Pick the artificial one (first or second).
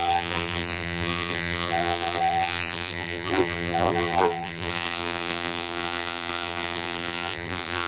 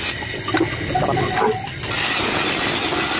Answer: first